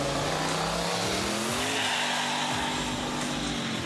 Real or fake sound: real